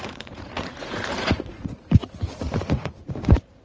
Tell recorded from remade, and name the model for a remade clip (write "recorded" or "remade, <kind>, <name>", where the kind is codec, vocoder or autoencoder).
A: remade, vocoder, Vocos